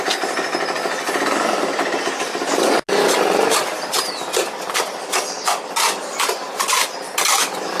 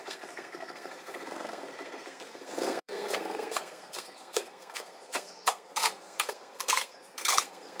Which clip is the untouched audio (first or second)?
first